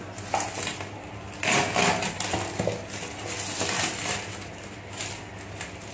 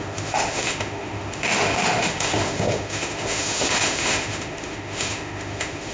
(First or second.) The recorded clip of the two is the first